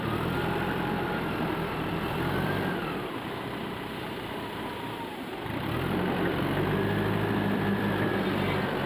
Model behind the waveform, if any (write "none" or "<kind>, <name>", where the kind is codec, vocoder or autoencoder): vocoder, BigVGAN v2